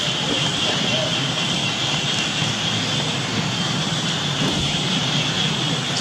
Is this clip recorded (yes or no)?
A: no